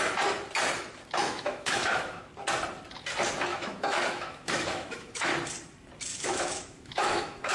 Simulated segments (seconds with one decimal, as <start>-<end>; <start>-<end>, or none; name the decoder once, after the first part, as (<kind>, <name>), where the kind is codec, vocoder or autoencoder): 1.2-2.3 (autoencoder, DAC-VAE); 3.5-5.3; 6.1-7.5